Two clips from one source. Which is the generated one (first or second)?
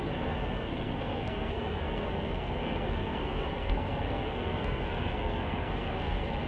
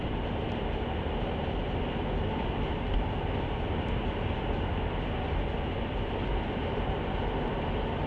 first